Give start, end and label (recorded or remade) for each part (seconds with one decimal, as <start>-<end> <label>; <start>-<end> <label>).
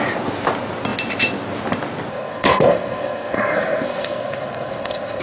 0.0-2.1 recorded; 2.1-5.2 remade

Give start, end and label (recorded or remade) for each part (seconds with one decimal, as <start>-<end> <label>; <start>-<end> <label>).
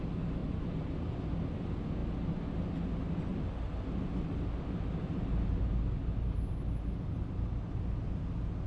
0.0-8.7 recorded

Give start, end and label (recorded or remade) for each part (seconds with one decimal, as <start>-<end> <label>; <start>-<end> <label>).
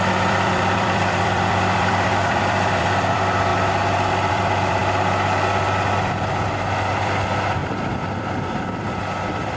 0.0-3.5 remade; 3.5-4.3 recorded; 4.3-4.8 remade; 4.8-6.9 recorded; 6.9-9.6 remade